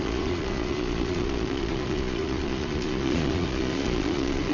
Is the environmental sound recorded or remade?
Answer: remade